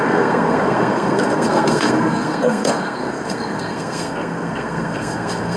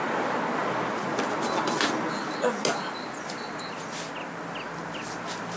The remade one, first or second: first